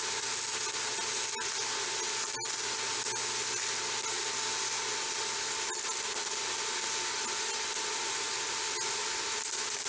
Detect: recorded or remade recorded